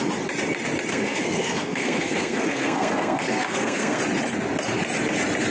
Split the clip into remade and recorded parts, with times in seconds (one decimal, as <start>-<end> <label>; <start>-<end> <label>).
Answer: 0.0-0.9 recorded; 0.9-4.0 remade; 4.0-5.5 recorded